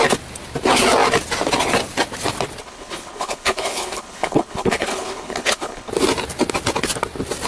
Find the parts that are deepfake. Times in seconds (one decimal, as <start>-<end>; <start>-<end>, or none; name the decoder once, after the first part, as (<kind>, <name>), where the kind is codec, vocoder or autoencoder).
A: 2.6-5.9 (codec, HILCodec)